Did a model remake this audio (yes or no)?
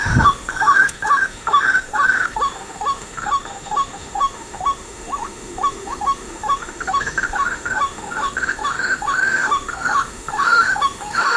yes